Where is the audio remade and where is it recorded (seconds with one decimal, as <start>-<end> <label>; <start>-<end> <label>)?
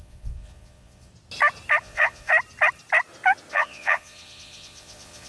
0.0-1.1 remade; 1.1-1.8 recorded; 1.8-2.3 remade; 2.3-3.5 recorded; 3.5-5.3 remade